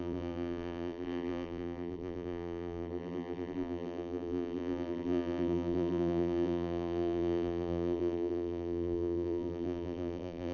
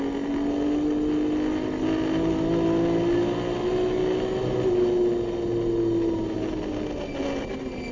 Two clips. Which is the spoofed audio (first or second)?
first